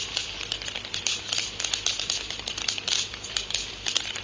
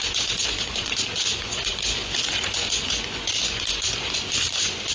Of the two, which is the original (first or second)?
first